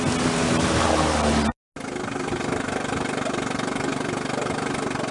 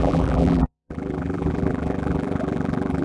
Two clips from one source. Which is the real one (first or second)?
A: first